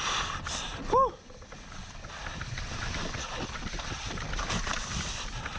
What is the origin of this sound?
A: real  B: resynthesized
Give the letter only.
A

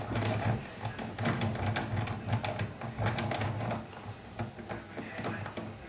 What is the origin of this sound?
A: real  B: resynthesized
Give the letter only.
A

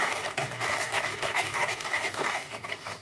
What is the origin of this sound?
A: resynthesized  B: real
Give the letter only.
A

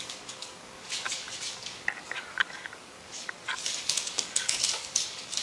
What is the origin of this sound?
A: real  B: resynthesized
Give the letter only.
B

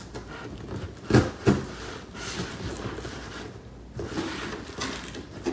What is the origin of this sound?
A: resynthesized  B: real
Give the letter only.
B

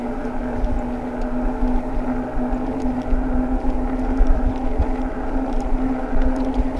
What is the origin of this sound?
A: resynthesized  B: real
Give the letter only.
B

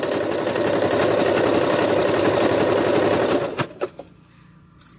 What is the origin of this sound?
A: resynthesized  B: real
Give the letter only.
B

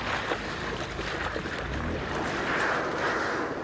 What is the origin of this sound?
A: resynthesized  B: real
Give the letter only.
B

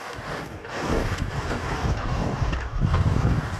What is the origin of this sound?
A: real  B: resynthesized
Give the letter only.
B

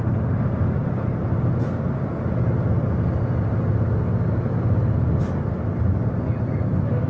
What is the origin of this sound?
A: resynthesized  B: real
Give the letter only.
B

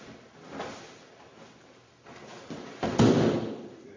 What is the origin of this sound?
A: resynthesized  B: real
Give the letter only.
B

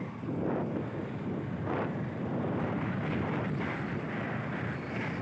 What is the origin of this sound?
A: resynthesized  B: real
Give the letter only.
B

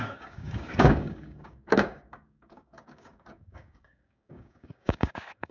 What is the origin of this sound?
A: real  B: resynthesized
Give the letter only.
B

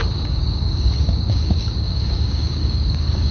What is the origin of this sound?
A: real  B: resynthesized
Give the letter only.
B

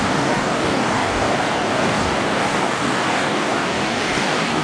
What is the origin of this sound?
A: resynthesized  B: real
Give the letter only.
A